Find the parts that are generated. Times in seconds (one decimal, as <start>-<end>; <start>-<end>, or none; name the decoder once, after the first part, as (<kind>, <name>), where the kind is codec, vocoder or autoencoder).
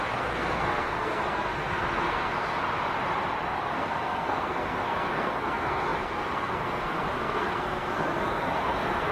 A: 0.0-2.6 (codec, SNAC); 3.6-9.1